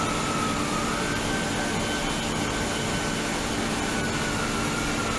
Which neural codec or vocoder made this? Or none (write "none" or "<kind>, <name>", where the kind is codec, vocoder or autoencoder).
none